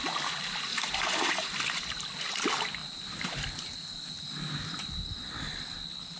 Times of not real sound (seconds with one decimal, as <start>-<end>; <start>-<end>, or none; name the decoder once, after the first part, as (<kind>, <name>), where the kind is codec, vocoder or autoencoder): 0.7-1.5 (vocoder, Vocos)